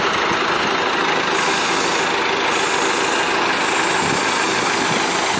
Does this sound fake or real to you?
real